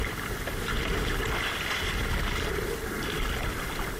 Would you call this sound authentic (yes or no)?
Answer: yes